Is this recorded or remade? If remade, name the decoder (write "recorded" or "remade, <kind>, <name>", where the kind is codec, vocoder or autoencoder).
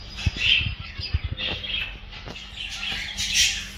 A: recorded